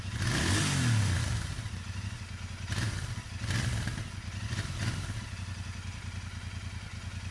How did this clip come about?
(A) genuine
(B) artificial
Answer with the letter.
A